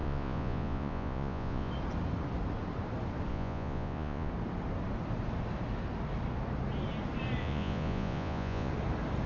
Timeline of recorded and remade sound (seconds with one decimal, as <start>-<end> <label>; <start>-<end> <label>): 0.0-1.7 remade; 1.7-3.3 recorded; 3.3-4.3 remade; 4.3-7.4 recorded; 7.4-8.7 remade; 8.7-9.3 recorded